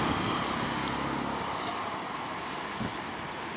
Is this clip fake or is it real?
real